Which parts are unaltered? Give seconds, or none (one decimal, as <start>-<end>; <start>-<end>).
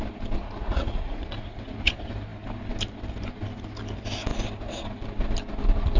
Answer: 0.0-0.4; 1.9-6.0